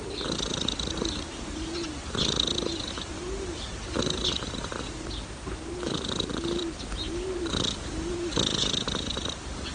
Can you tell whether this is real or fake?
real